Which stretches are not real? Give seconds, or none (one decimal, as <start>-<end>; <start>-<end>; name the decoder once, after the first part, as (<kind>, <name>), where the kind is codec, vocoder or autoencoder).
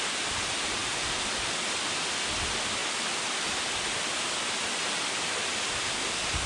none